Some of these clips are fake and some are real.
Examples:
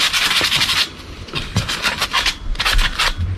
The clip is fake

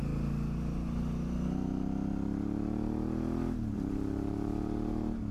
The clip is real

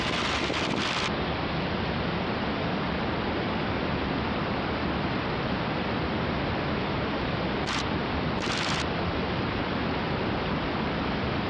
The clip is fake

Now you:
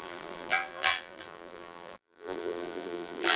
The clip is fake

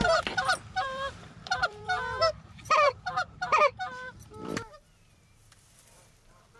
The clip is fake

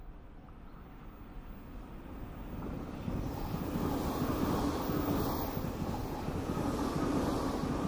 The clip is real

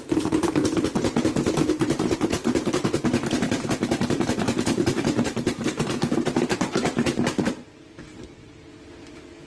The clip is fake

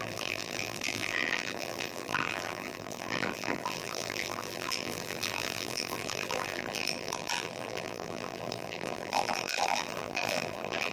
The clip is fake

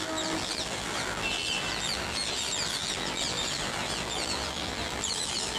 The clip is fake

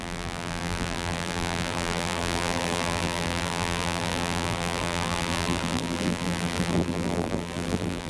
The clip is fake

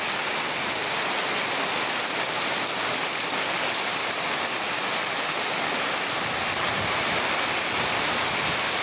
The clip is real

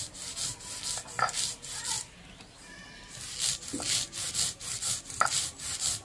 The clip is real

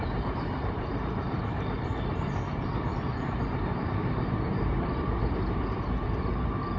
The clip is fake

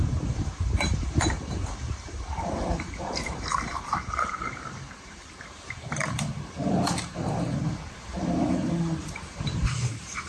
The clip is fake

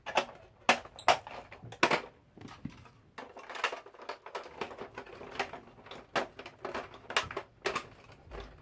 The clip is real